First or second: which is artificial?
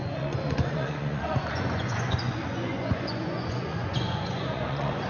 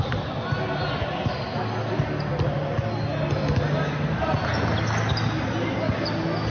first